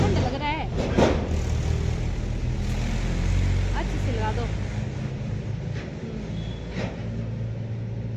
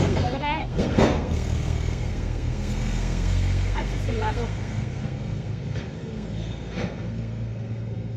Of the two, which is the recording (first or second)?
first